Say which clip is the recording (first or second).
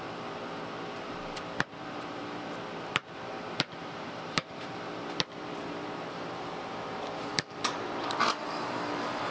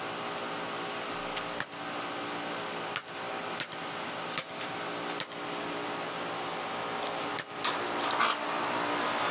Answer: second